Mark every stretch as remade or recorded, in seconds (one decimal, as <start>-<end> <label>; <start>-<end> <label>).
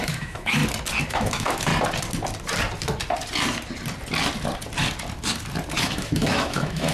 0.0-0.6 remade; 0.6-1.1 recorded; 1.1-1.7 remade; 1.7-5.8 recorded; 5.8-6.9 remade